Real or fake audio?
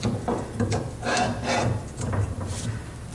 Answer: real